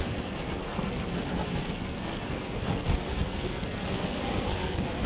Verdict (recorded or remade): remade